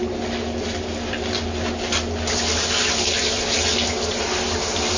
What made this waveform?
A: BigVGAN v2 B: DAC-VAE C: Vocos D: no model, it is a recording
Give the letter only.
D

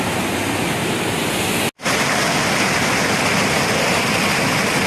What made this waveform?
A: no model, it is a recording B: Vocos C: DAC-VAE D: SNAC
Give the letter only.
A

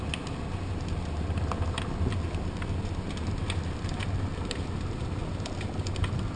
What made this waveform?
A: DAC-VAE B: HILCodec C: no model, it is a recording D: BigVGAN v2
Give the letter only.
C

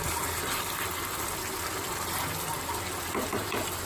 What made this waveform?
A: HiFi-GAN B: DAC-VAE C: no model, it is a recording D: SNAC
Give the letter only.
C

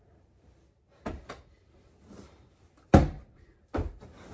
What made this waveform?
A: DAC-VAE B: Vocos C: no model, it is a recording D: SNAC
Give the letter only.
C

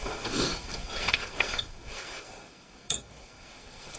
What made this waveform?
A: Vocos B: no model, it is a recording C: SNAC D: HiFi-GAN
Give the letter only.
C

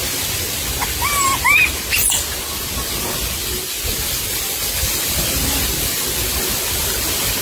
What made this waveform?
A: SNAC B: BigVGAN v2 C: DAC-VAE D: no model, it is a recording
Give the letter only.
D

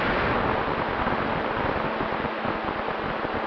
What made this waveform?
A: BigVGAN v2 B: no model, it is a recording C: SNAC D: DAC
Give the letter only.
B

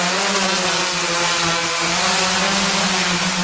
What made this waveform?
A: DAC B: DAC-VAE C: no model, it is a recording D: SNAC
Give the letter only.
C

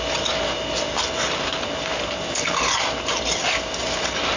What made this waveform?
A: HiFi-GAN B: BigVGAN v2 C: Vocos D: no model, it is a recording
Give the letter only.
D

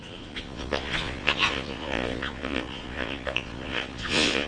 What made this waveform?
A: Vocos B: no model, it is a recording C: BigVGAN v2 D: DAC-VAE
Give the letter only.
A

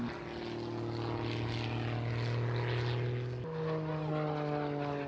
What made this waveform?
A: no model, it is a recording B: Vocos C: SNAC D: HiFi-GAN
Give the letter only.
A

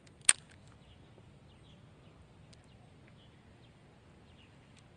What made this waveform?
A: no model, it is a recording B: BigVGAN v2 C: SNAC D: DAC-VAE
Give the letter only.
A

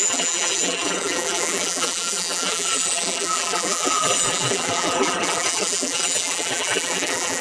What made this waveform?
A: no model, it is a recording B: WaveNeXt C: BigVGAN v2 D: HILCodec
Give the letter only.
C